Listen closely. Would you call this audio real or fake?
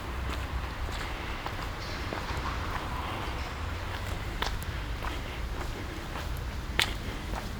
fake